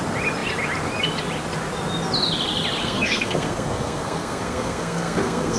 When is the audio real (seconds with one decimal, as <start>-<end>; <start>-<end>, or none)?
0.0-2.8